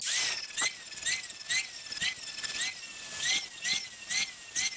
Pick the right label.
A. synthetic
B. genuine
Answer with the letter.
B